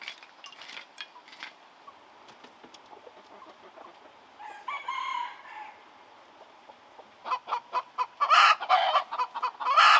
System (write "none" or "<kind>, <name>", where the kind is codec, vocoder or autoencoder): none